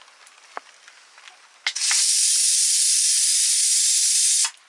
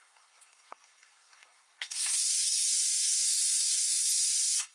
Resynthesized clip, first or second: second